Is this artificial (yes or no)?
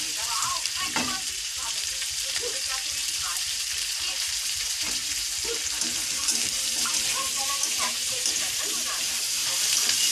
yes